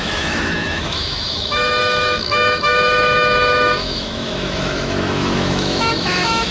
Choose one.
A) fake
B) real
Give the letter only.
A